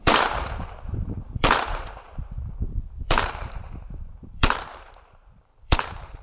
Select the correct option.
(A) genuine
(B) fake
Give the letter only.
B